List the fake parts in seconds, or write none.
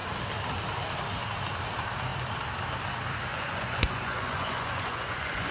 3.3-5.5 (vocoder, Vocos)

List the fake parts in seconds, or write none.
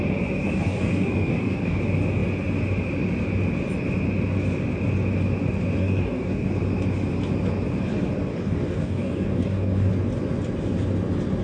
0.4-1.8 (codec, DAC); 5.8-6.5; 8.3-9.9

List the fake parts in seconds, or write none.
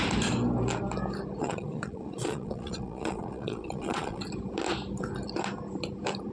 1.4-4.2 (vocoder, Vocos)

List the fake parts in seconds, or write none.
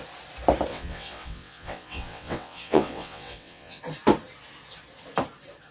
0.7-3.8 (vocoder, WaveNeXt)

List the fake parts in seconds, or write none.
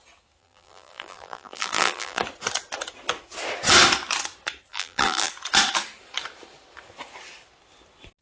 0.4-2.2 (vocoder, BigVGAN v2); 4.7-5.3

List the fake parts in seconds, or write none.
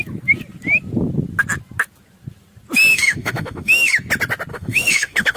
2.9-3.9 (autoencoder, DAC-VAE); 4.5-5.4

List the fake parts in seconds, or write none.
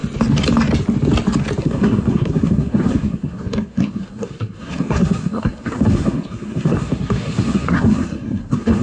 1.6-8.8 (codec, SNAC)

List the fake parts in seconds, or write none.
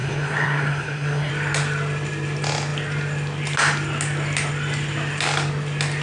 0.0-1.3 (codec, SNAC)